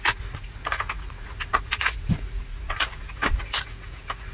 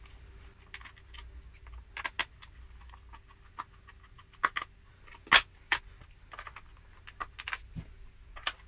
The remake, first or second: first